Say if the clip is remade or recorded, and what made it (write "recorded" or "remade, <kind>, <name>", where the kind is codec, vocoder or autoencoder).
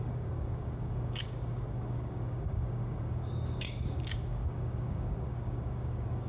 remade, codec, DAC